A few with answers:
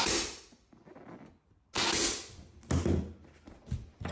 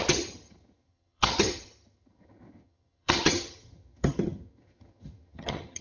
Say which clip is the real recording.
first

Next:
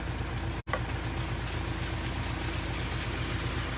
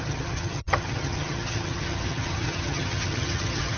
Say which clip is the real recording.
first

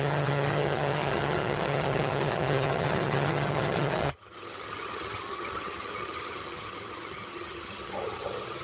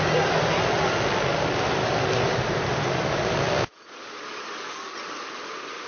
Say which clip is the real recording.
second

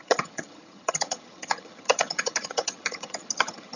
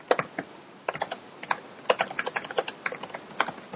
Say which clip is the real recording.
second